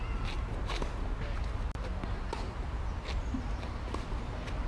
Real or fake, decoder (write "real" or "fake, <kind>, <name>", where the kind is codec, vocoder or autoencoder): real